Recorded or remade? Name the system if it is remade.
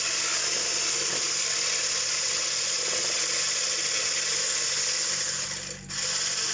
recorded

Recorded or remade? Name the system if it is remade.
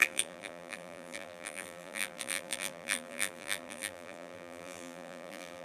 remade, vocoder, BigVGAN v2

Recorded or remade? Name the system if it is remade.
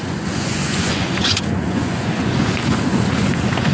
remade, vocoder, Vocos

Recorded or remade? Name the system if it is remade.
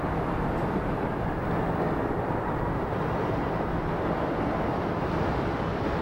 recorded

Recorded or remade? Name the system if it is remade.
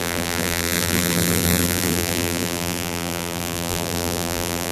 remade, vocoder, BigVGAN v2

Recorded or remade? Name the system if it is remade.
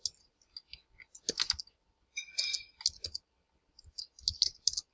recorded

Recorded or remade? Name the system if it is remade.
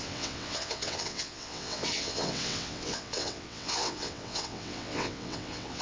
remade, vocoder, WaveNeXt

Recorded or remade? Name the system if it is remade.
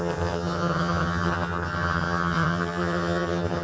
remade, vocoder, HiFi-GAN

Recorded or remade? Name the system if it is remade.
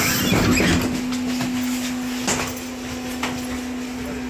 recorded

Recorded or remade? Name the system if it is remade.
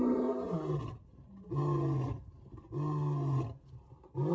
recorded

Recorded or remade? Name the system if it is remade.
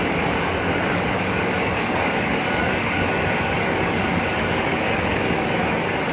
remade, codec, DAC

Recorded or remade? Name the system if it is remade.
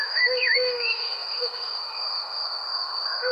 remade, autoencoder, DAC-VAE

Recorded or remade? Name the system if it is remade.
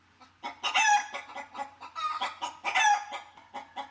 recorded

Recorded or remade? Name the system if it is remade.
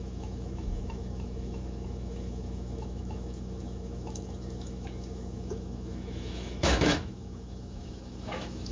remade, autoencoder, DAC-VAE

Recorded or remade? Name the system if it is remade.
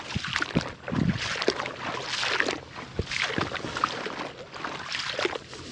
recorded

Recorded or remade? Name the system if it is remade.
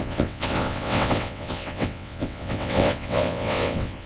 remade, vocoder, WaveNeXt